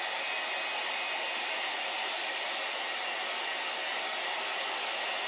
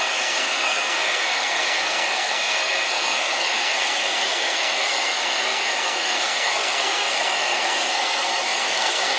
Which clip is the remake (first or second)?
second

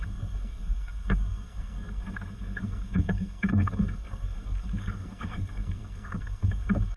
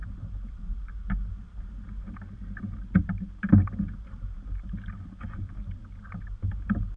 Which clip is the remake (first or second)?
first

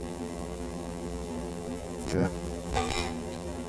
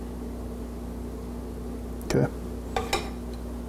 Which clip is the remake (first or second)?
first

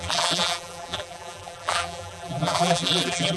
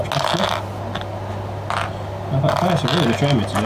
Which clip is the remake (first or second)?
first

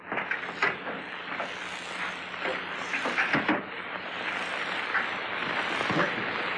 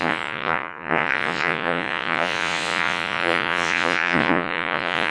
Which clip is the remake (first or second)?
second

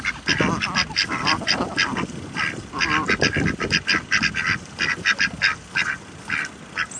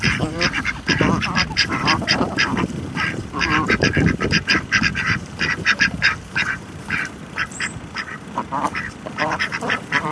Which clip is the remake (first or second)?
second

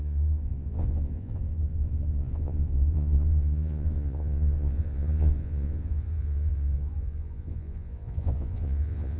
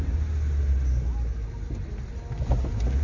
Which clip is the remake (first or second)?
first